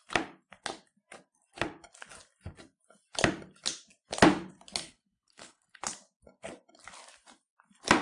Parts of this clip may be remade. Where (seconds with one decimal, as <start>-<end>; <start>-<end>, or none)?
4.8-5.8